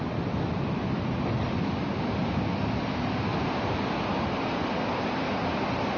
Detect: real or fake real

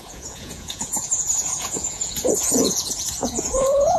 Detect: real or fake fake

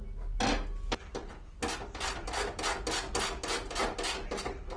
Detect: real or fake real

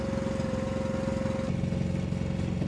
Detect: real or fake real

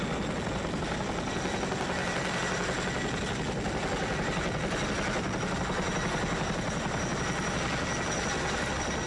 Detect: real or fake real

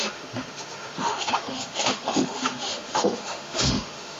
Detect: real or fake fake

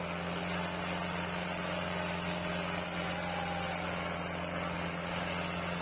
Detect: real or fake real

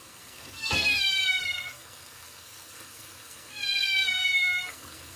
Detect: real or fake fake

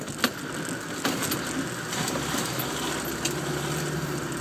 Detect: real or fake real